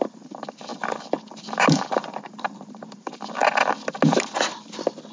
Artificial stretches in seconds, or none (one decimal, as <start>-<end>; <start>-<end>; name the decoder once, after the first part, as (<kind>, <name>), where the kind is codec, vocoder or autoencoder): 0.0-3.4 (vocoder, BigVGAN v2)